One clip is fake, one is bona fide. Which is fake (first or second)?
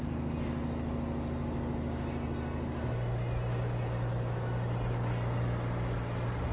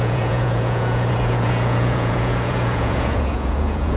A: second